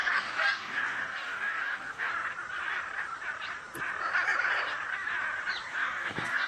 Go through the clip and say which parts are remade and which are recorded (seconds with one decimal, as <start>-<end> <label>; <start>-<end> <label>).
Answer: 0.0-2.1 remade; 2.1-5.7 recorded; 5.7-6.5 remade